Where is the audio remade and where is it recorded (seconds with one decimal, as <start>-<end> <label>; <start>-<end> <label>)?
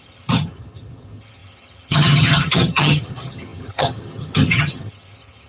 0.0-5.5 remade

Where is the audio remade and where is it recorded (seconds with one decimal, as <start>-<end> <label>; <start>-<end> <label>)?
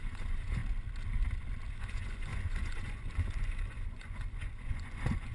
0.0-0.6 remade; 0.6-1.7 recorded; 1.7-5.3 remade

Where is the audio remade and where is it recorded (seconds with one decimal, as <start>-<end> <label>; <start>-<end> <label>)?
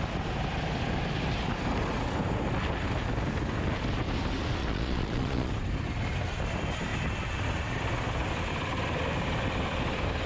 0.0-4.6 recorded; 4.6-5.5 remade; 5.5-10.3 recorded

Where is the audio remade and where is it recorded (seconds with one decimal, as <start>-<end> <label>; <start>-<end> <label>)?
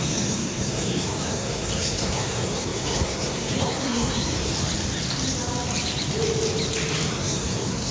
0.0-4.5 remade; 4.5-7.1 recorded; 7.1-7.9 remade